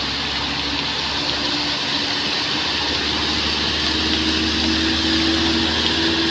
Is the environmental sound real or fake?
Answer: real